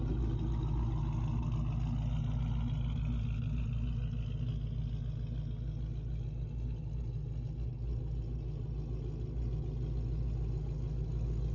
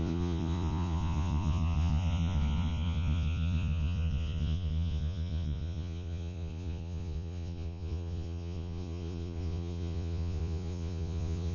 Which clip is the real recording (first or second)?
first